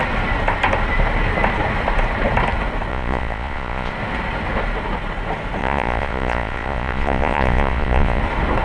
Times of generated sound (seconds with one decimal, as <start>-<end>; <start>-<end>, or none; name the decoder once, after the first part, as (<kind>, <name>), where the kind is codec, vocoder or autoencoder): 2.9-3.9 (vocoder, Vocos); 5.6-8.2